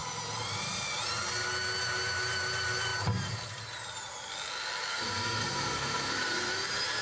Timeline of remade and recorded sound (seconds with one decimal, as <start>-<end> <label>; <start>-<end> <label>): 0.0-4.9 recorded; 4.9-6.1 remade; 6.1-7.0 recorded